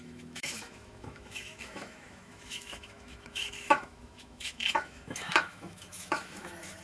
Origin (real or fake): fake